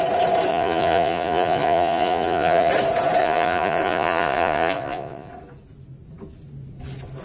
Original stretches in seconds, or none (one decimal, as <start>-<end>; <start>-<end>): 0.0-0.5; 2.7-3.2; 5.3-7.2